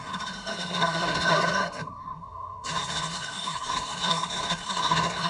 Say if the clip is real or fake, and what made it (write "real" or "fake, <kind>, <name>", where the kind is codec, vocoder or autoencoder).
fake, codec, SNAC